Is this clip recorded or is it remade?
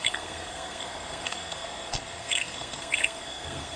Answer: remade